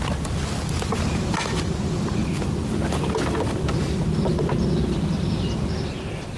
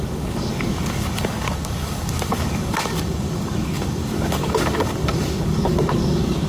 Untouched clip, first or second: first